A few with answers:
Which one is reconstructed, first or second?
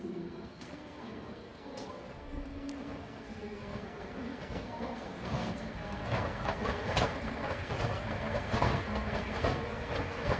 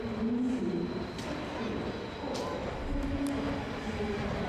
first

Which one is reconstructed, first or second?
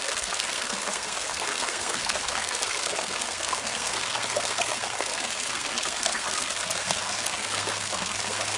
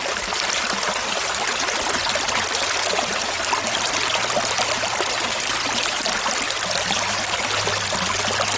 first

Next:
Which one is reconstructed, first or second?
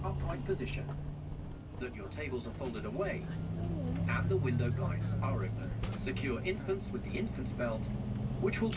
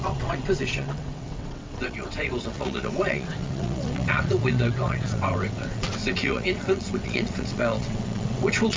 second